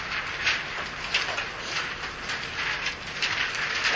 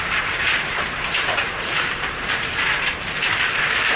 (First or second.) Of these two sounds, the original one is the first